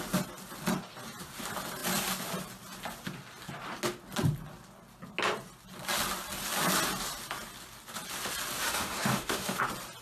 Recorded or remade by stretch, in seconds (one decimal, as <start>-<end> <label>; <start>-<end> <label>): 0.0-8.6 recorded; 8.6-9.6 remade; 9.6-10.0 recorded